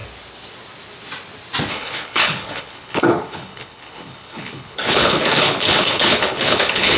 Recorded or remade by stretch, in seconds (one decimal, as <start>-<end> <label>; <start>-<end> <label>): 0.0-1.7 recorded; 1.7-7.0 remade